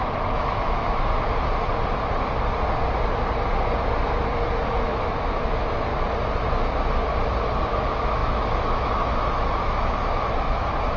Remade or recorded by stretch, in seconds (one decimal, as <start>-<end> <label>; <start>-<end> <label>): 0.0-1.1 remade; 1.1-4.6 recorded; 4.6-5.9 remade; 5.9-7.6 recorded; 7.6-11.0 remade